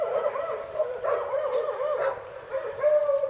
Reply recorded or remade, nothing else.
remade